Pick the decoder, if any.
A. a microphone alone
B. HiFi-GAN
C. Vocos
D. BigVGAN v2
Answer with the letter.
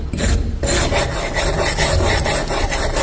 A